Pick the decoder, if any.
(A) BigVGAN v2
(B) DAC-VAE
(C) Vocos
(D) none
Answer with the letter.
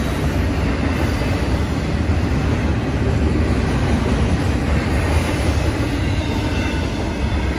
D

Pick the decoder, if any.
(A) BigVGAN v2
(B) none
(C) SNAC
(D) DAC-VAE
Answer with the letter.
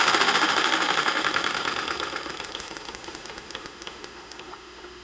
D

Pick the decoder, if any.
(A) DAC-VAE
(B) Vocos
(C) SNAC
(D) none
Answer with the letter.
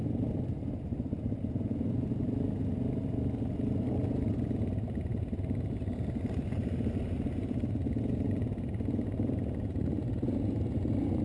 D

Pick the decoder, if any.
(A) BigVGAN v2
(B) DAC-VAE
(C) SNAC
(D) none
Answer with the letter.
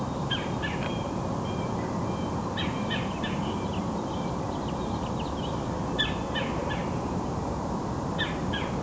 D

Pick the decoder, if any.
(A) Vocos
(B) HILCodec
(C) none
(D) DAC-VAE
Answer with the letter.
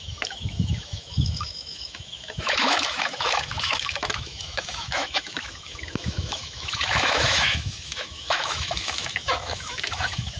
D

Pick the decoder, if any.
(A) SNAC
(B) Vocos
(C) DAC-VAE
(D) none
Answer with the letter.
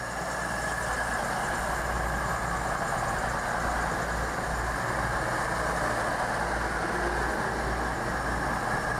D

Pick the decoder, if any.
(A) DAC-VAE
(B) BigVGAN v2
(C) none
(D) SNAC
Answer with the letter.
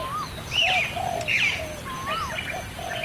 C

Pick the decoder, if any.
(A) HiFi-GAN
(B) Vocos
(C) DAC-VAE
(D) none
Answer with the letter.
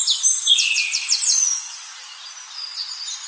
D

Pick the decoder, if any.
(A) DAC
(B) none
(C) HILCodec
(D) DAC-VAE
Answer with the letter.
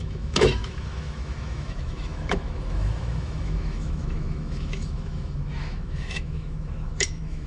D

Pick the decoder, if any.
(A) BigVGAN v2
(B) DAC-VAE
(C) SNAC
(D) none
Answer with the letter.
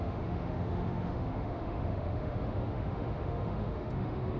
B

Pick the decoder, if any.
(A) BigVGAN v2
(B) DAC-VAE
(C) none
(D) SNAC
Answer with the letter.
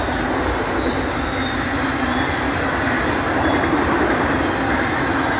C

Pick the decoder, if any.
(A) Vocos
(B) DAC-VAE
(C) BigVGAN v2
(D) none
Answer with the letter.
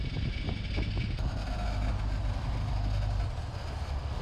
D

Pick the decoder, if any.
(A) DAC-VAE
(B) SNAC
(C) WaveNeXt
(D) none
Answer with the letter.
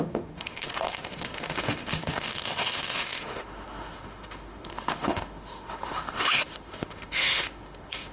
A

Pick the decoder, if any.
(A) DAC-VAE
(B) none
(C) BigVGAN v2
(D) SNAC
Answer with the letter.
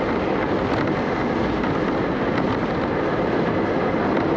B